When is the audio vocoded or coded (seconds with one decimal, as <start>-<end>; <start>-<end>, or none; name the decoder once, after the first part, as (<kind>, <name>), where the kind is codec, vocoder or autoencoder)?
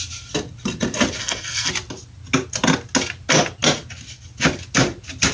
1.2-1.7 (codec, SNAC)